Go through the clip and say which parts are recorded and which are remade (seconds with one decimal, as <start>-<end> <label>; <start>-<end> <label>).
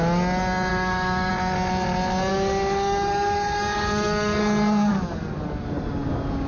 0.0-0.7 recorded; 0.7-1.3 remade; 1.3-2.3 recorded; 2.3-4.4 remade; 4.4-6.5 recorded